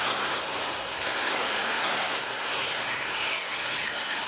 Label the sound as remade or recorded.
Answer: remade